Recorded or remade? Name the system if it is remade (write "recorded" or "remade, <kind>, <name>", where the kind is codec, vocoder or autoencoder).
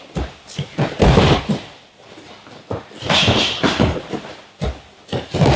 recorded